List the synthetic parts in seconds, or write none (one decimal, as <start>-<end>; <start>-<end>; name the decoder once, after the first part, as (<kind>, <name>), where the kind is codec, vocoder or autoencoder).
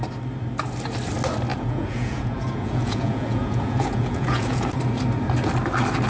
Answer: 1.5-4.8 (vocoder, Vocos)